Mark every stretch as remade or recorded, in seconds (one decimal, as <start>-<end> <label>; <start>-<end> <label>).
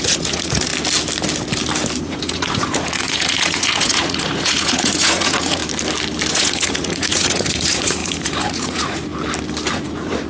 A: 0.0-0.7 remade; 0.7-2.0 recorded; 2.0-5.6 remade; 5.6-6.3 recorded; 6.3-9.1 remade; 9.1-9.7 recorded; 9.7-10.3 remade